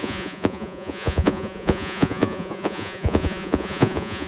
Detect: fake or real fake